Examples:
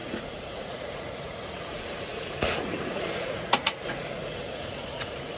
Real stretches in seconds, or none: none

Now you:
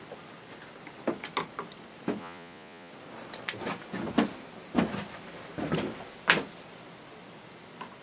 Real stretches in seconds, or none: 0.0-2.2; 2.9-8.0

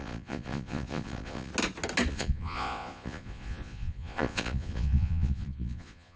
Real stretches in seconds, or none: 1.5-2.1